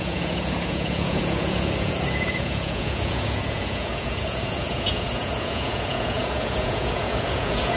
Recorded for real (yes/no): no